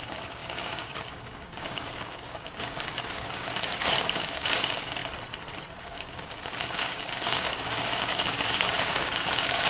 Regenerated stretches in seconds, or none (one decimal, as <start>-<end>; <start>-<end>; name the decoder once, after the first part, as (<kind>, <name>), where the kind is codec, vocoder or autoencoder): 0.0-5.0 (codec, DAC); 5.8-9.7